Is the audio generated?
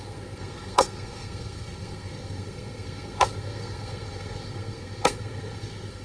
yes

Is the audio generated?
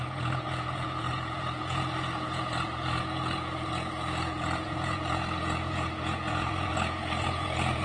yes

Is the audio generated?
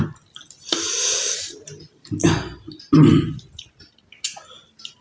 no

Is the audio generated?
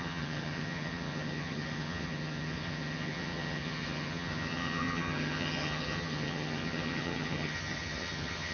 yes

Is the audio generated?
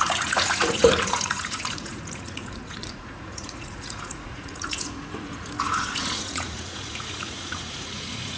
yes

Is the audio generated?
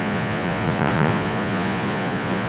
yes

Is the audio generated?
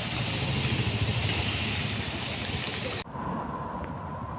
no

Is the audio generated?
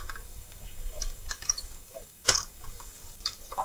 yes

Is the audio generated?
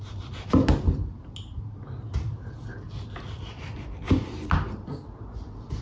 no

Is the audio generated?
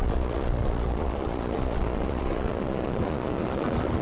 yes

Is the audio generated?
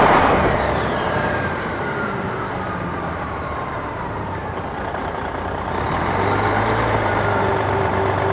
yes